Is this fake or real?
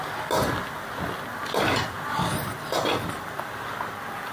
real